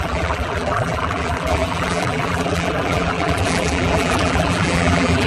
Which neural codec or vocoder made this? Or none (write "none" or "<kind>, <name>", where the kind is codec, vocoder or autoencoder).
vocoder, BigVGAN v2